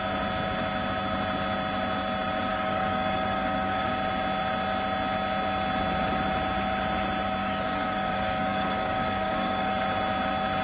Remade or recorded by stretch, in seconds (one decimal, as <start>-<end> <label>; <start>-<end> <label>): 0.0-2.5 recorded; 2.5-3.9 remade; 3.9-7.4 recorded; 7.4-9.7 remade; 9.7-10.6 recorded